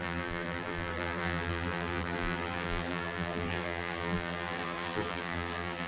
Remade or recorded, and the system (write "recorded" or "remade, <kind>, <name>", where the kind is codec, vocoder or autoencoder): remade, vocoder, BigVGAN v2